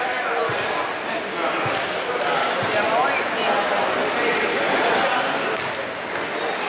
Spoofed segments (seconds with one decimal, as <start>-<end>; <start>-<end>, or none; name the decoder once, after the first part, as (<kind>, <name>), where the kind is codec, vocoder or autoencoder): none